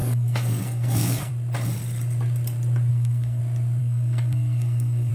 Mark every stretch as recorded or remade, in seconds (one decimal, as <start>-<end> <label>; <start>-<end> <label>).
0.0-1.3 remade; 1.3-2.9 recorded; 2.9-3.4 remade; 3.4-3.8 recorded; 3.8-5.1 remade